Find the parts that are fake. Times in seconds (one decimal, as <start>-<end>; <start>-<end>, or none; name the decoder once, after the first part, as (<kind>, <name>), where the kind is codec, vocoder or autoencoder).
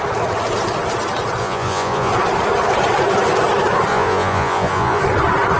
1.4-2.1 (vocoder, Vocos); 3.9-5.0